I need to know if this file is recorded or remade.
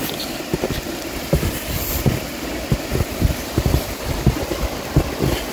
recorded